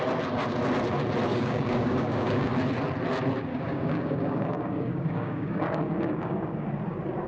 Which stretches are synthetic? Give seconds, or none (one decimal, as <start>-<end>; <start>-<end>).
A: 1.3-2.5; 3.5-6.7

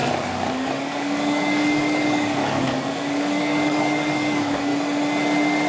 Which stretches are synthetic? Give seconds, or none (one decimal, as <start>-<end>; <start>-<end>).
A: 0.0-4.7

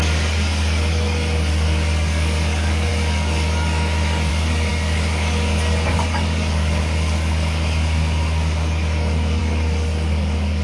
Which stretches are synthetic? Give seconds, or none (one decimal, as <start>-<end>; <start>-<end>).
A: 0.0-10.6

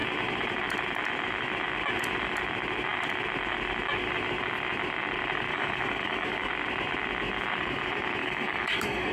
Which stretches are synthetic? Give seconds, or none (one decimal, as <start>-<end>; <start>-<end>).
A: 5.5-6.5; 8.2-9.1